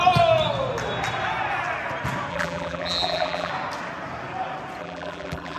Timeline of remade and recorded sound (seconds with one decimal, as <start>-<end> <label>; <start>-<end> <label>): 0.0-2.3 recorded; 2.3-3.5 remade; 3.5-4.8 recorded; 4.8-5.6 remade